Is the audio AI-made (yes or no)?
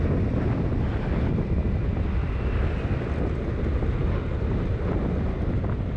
no